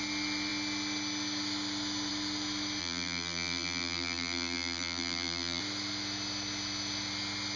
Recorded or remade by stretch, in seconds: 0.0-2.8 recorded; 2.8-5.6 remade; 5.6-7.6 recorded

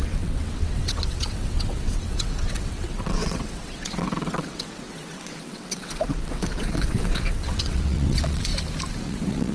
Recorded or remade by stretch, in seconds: 0.0-8.5 remade; 8.5-9.0 recorded; 9.0-9.5 remade